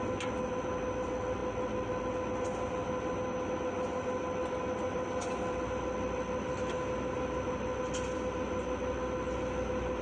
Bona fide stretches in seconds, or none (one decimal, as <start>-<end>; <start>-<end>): 0.0-10.0